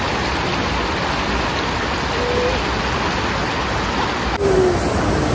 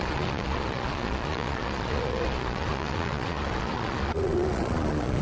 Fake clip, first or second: second